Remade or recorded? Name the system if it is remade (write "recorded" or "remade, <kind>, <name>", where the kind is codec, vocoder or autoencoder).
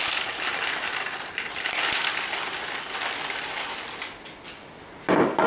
recorded